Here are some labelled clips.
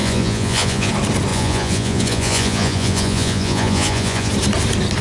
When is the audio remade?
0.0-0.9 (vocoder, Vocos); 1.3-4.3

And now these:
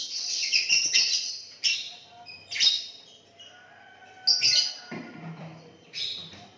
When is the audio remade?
0.0-1.3 (vocoder, WaveNeXt)

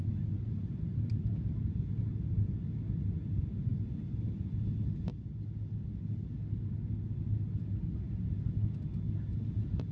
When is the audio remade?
none

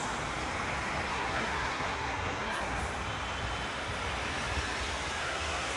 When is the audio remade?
1.1-2.8 (codec, SNAC); 5.2-5.8

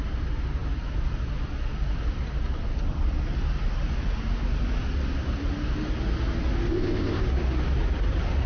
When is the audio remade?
6.7-7.2 (codec, ZipCodec)